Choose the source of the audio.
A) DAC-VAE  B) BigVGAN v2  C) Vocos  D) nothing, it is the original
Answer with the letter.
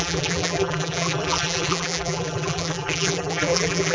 B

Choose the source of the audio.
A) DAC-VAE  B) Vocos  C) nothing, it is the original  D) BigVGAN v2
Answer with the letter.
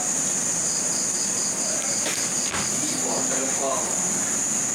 C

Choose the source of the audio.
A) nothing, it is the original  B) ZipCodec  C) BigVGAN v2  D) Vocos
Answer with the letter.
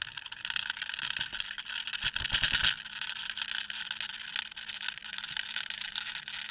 A